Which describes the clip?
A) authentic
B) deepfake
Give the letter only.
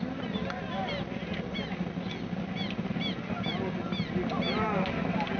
A